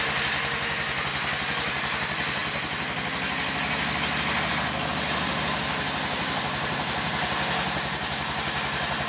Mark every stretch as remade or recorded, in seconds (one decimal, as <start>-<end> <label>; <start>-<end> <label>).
0.0-9.1 recorded